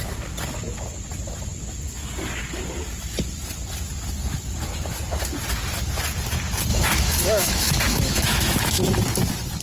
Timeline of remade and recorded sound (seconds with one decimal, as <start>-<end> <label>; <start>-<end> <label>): 0.0-6.7 recorded; 6.7-8.8 remade; 8.8-9.6 recorded